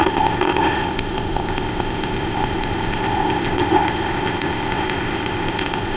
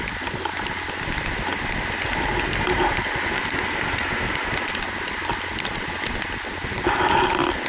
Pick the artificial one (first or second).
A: first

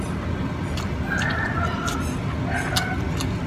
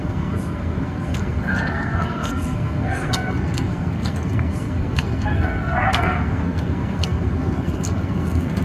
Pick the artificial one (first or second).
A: second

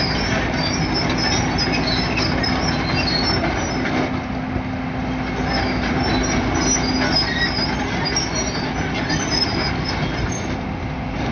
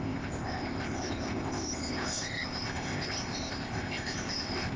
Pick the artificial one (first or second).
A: second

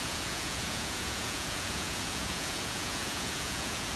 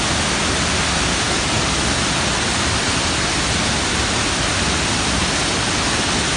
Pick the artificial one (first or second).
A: first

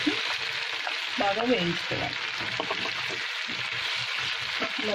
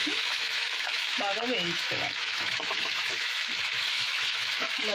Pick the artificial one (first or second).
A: second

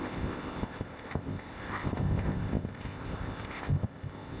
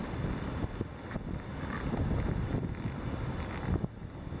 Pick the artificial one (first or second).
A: first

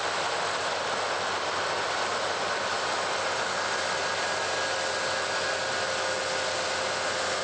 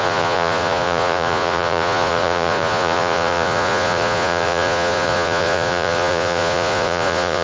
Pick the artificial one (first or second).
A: second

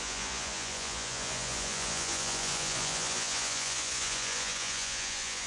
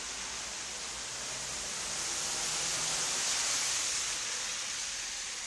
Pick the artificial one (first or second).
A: first